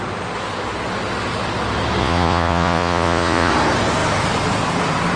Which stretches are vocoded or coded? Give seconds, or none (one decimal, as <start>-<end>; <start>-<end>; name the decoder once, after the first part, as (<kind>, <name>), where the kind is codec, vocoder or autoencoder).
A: 2.0-3.5 (vocoder, Vocos)